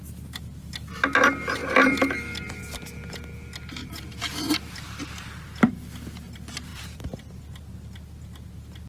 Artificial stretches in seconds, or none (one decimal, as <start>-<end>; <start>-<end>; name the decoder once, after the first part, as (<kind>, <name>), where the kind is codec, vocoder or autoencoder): 1.6-2.6 (vocoder, BigVGAN v2); 3.8-5.7; 6.7-7.4